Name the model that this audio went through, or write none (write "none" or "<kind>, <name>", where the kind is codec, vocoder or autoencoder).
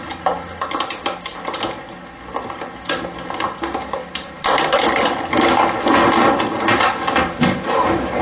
none